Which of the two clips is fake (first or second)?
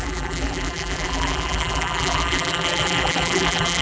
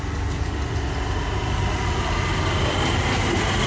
first